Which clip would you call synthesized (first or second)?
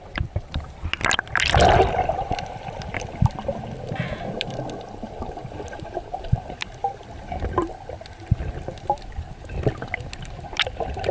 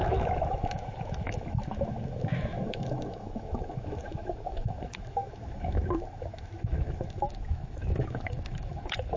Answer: second